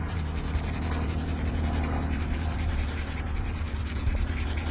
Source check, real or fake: fake